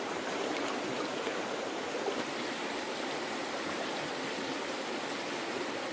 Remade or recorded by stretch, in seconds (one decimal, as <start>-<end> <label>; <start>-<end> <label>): 0.0-1.3 recorded; 1.3-2.2 remade; 2.2-5.9 recorded